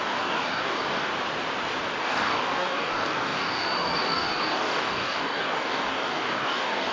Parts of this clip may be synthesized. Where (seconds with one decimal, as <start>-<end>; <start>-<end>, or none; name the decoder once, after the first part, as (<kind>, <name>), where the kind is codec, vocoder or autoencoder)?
0.0-1.1 (codec, DAC); 2.0-6.9